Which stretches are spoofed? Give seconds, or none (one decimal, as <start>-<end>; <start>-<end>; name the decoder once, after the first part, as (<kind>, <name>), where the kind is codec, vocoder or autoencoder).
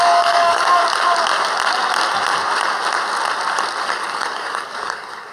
0.0-0.8 (codec, DAC); 3.8-5.3